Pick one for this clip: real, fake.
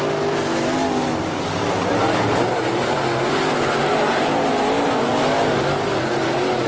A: real